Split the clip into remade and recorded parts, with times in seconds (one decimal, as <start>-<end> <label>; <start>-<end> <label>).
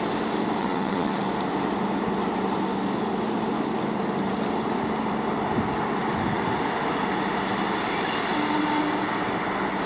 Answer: 0.0-0.6 recorded; 0.6-1.2 remade; 1.2-9.9 recorded